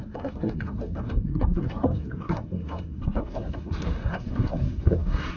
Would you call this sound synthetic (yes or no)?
yes